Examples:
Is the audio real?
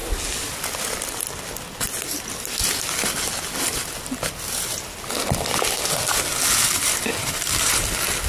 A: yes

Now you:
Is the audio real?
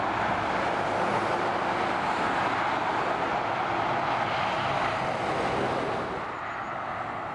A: yes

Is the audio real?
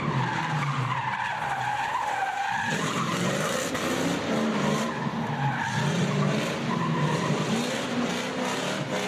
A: yes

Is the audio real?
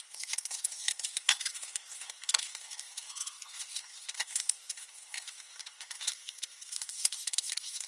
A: no